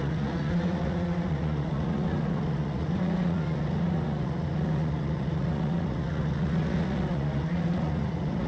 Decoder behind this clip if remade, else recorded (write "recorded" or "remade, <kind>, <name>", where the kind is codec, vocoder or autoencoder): remade, vocoder, Vocos